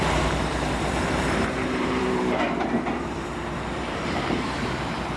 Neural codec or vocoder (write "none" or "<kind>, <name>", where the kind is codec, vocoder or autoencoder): vocoder, BigVGAN v2